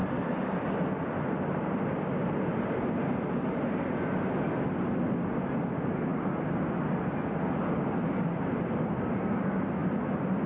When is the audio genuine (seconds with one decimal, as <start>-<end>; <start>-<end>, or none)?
3.6-9.8